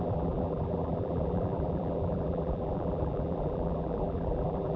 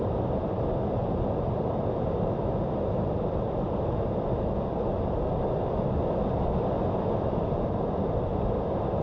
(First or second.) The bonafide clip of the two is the second